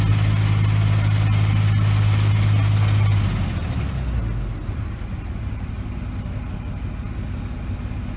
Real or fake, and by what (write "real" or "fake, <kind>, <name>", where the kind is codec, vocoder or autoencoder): real